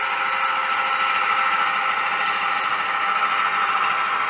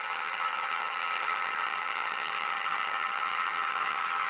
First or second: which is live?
first